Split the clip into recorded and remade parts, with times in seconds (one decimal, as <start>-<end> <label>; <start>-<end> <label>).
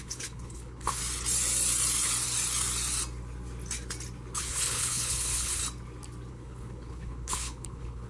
0.0-1.0 remade; 1.0-4.4 recorded; 4.4-5.6 remade; 5.6-6.3 recorded; 6.3-8.1 remade